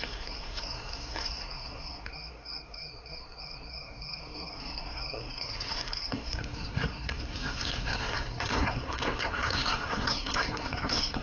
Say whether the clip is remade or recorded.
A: remade